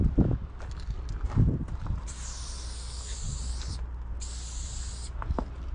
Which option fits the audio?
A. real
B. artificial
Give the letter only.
A